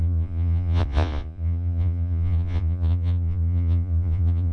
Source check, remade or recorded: remade